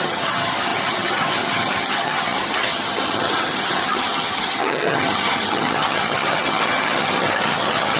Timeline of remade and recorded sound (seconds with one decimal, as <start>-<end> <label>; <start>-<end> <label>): 0.0-8.0 remade